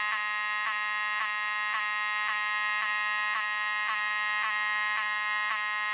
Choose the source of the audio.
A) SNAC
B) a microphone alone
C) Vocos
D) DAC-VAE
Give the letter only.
B